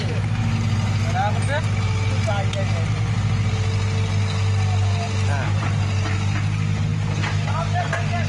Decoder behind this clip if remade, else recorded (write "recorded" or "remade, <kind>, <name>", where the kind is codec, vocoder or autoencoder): recorded